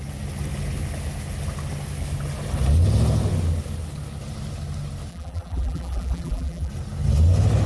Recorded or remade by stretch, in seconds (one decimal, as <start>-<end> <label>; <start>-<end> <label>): 0.0-5.1 recorded; 5.1-6.7 remade; 6.7-7.7 recorded